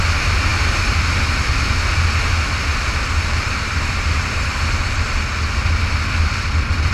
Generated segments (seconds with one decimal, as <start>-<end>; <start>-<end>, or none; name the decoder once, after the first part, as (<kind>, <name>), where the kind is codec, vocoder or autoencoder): 2.7-5.1 (vocoder, BigVGAN v2)